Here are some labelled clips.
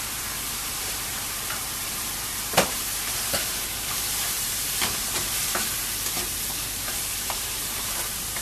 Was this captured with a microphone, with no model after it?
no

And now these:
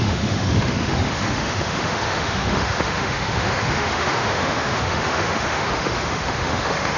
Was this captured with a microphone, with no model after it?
no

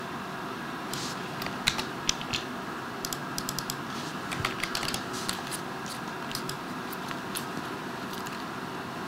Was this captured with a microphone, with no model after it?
yes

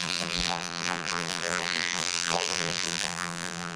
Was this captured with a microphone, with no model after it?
no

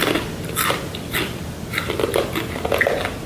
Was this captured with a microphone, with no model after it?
yes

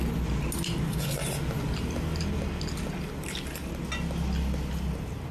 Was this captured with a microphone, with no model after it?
yes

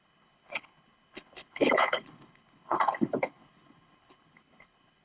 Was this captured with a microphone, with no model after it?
no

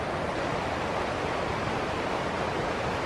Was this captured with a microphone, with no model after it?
yes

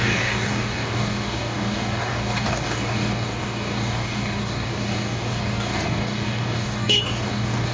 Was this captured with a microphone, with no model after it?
no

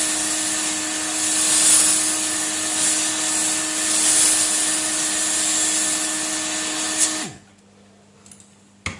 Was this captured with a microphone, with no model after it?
yes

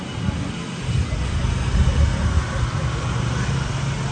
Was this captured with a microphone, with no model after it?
yes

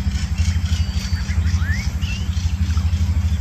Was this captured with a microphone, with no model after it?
yes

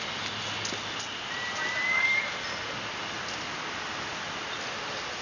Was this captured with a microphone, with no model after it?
yes